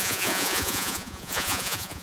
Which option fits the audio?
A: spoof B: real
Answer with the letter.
A